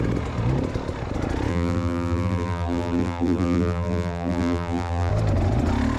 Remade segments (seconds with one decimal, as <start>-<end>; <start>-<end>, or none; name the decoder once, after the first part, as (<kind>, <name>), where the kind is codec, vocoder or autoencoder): 1.5-5.1 (vocoder, BigVGAN v2)